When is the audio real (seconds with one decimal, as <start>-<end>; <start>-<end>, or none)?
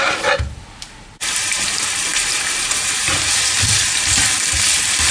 0.0-5.1